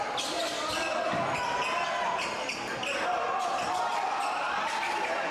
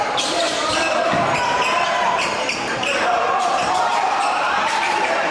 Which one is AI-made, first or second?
second